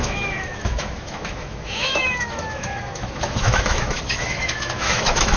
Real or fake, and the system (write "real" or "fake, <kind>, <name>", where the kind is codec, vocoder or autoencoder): fake, autoencoder, DAC-VAE